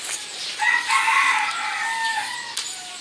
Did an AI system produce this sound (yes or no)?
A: no